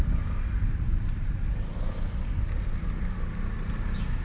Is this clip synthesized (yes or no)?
no